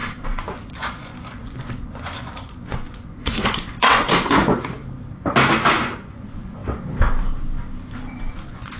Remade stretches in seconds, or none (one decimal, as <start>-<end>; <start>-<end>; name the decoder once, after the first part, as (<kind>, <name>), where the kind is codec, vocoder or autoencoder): 0.0-4.8 (vocoder, Vocos); 5.7-6.6; 8.3-8.8